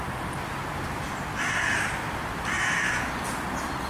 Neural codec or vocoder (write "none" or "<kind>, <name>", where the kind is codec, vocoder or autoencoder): none